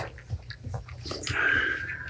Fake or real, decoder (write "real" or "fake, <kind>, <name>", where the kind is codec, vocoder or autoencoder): real